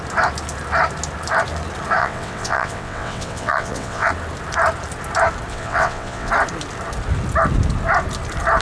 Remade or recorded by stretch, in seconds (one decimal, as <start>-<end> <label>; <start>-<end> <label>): 0.0-2.0 recorded; 2.0-4.1 remade; 4.1-5.5 recorded; 5.5-6.3 remade; 6.3-8.6 recorded